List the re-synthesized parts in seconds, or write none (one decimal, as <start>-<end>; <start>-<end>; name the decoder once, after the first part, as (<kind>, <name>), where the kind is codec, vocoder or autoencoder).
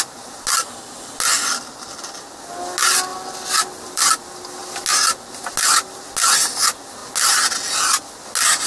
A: 3.1-4.1 (vocoder, BigVGAN v2)